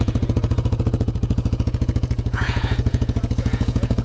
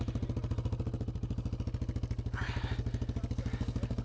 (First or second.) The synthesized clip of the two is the first